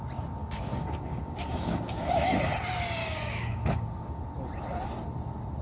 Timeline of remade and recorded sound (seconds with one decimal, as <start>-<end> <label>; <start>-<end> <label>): 0.0-0.4 recorded; 0.4-2.1 remade; 2.1-3.0 recorded; 3.0-4.2 remade; 4.2-5.6 recorded